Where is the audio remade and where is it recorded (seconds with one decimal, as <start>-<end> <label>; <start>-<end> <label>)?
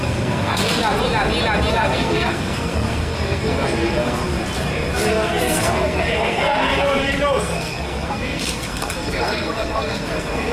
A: 0.0-0.8 remade; 0.8-1.7 recorded; 1.7-4.3 remade; 4.3-5.1 recorded; 5.1-10.5 remade